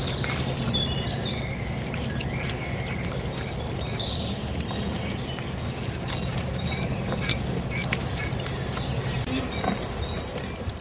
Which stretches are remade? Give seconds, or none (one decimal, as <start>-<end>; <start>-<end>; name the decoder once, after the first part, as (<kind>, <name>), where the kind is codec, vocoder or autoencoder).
none